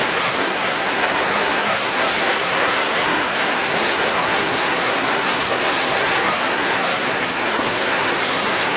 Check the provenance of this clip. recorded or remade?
remade